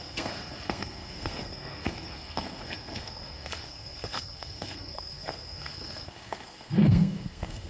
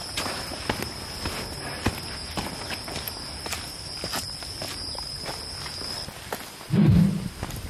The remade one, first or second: first